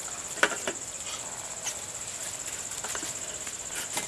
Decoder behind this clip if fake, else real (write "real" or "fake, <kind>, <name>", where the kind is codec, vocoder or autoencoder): real